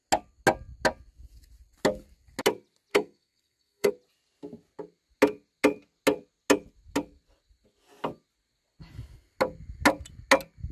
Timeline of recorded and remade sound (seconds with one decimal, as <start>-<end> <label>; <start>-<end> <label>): 0.0-2.9 recorded; 2.9-3.9 remade; 3.9-10.7 recorded